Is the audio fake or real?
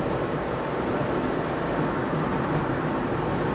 real